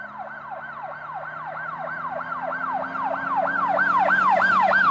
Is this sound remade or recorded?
recorded